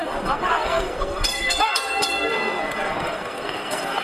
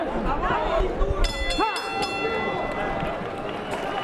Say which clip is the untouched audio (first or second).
second